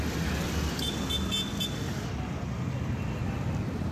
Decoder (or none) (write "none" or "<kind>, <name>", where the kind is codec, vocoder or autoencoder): none